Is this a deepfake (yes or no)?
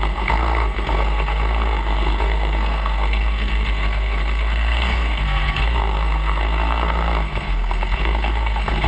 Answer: yes